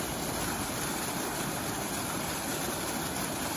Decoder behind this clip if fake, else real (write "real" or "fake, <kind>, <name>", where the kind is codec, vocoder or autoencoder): fake, vocoder, BigVGAN v2